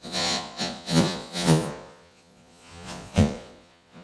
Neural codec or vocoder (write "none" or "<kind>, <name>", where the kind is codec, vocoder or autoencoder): vocoder, Vocos